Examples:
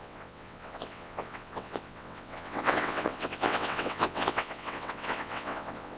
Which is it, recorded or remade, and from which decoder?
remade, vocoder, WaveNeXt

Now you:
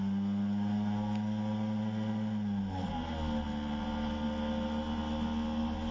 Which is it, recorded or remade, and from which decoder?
recorded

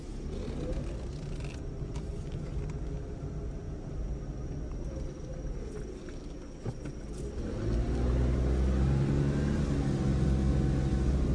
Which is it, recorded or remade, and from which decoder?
recorded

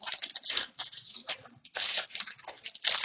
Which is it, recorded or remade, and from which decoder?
recorded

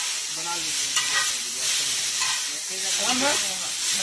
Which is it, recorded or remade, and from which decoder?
recorded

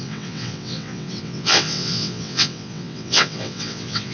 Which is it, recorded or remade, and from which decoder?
remade, vocoder, WaveNeXt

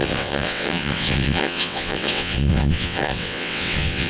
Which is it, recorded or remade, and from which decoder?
remade, vocoder, WaveNeXt